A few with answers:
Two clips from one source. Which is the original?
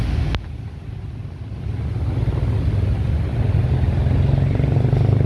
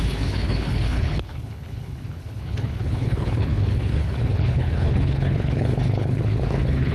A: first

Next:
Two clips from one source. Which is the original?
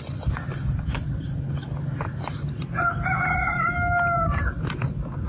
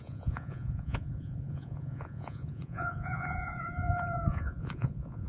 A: first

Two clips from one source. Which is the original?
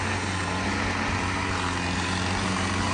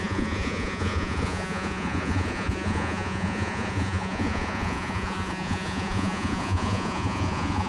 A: first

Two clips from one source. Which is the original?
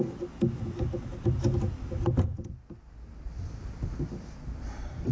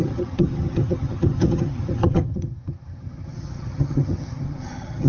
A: first